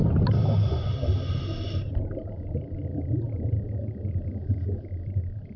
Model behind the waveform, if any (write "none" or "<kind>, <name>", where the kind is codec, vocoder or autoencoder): none